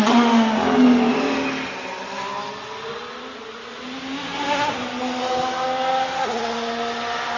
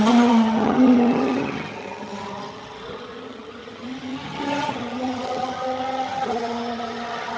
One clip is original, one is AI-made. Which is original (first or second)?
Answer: first